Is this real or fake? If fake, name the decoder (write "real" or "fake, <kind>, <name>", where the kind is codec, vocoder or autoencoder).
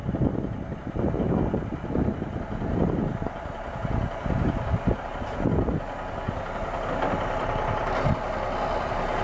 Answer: real